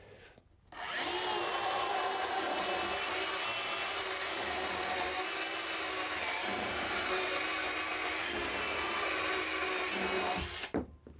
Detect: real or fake real